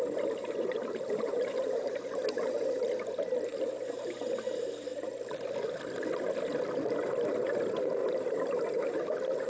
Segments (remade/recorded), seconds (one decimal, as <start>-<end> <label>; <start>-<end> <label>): 0.0-0.4 recorded; 0.4-2.1 remade; 2.1-3.5 recorded; 3.5-4.2 remade; 4.2-8.0 recorded; 8.0-9.0 remade; 9.0-9.5 recorded